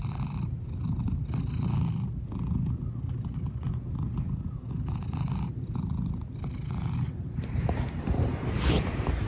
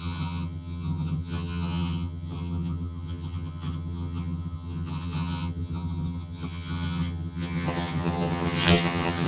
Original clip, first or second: first